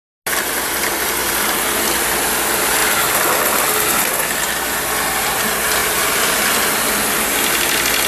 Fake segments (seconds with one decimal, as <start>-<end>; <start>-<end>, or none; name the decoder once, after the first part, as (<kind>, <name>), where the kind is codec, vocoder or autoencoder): 1.2-2.2 (vocoder, BigVGAN v2); 2.8-3.4; 5.8-6.4